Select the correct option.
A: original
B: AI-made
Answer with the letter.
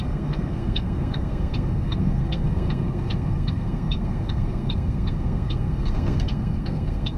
B